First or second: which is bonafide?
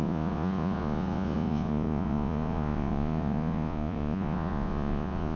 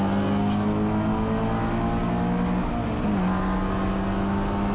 second